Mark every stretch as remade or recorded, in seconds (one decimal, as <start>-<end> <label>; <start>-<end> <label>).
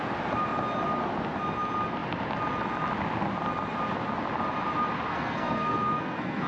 0.0-5.1 recorded; 5.1-6.5 remade